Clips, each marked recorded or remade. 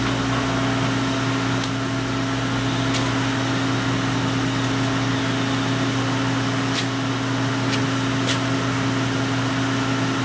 recorded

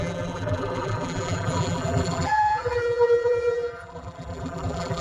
remade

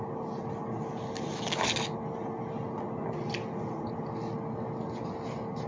recorded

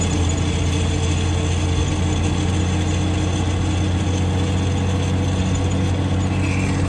recorded